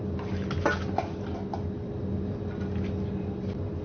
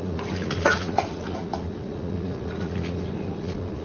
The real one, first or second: first